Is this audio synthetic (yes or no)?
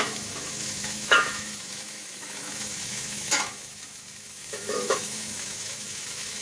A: yes